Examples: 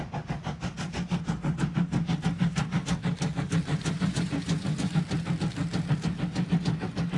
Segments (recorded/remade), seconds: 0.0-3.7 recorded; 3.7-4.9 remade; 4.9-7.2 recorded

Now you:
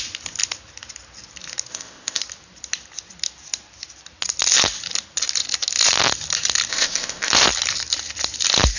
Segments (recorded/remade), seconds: 0.0-1.7 recorded; 1.7-2.2 remade; 2.2-6.7 recorded; 6.7-7.3 remade; 7.3-8.8 recorded

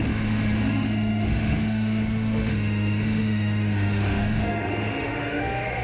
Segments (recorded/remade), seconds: 0.0-5.8 remade

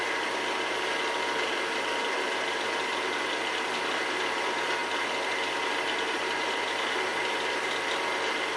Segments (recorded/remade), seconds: 0.0-8.6 recorded

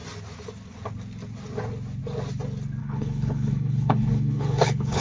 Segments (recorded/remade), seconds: 0.0-2.8 recorded; 2.8-5.0 remade

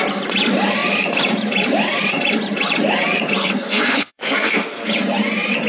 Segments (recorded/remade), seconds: 0.0-3.4 recorded; 3.4-4.9 remade; 4.9-5.7 recorded